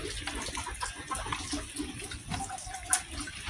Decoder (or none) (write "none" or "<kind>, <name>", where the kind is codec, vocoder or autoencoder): none